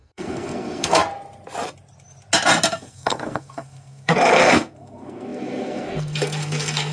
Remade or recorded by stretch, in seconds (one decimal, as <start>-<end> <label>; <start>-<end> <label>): 0.0-1.0 remade; 1.0-2.7 recorded; 2.7-6.9 remade